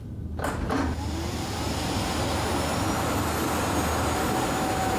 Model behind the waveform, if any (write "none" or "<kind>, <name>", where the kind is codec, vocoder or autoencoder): none